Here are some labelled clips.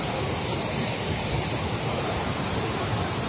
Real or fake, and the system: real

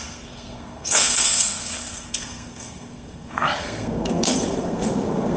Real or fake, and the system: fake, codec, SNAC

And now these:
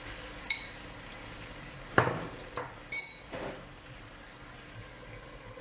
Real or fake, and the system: real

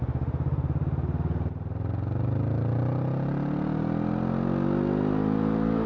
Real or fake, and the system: real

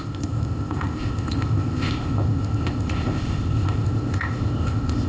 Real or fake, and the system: fake, codec, ZipCodec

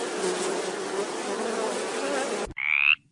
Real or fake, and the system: real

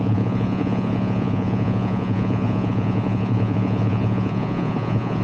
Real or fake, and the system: fake, vocoder, Vocos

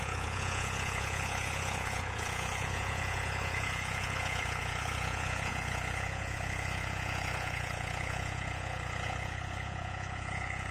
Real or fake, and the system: fake, vocoder, Vocos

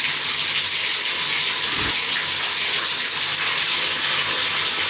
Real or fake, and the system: real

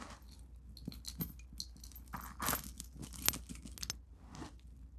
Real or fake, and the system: real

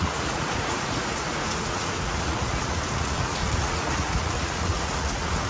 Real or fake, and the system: fake, vocoder, Vocos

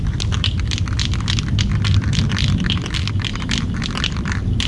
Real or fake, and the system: fake, vocoder, BigVGAN v2